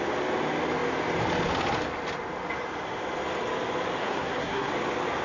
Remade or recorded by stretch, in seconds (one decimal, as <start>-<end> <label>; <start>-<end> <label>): 0.0-4.0 recorded; 4.0-4.7 remade; 4.7-5.2 recorded